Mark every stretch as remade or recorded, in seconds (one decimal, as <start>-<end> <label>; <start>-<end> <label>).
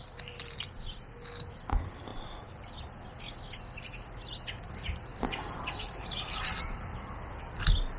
0.0-2.1 recorded; 2.1-2.8 remade; 2.8-5.1 recorded; 5.1-6.6 remade; 6.6-8.0 recorded